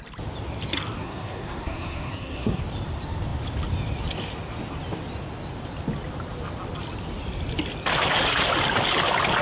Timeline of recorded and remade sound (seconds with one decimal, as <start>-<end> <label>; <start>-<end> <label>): 0.0-1.0 recorded; 1.0-2.6 remade; 2.6-9.4 recorded